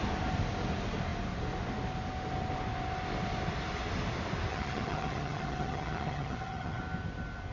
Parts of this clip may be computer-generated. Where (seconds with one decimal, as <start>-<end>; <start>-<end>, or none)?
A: 4.5-6.8